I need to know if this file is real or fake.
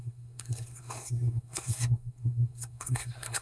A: fake